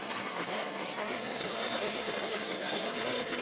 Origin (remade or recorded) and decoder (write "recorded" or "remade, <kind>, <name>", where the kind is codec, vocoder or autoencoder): remade, codec, SNAC